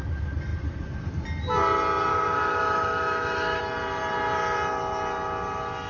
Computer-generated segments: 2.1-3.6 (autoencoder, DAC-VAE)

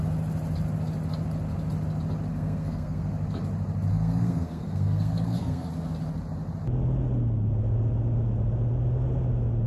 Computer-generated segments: 2.3-3.1 (codec, SNAC); 3.9-5.7

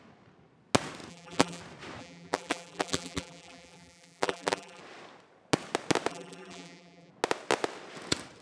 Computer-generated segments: 1.1-1.6 (vocoder, BigVGAN v2); 2.0-4.8; 6.1-7.1

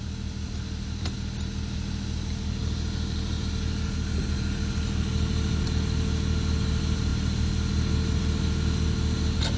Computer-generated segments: none

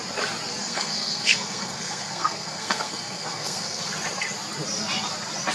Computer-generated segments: 0.6-3.9 (codec, SNAC)